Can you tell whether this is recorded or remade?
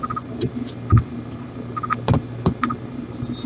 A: recorded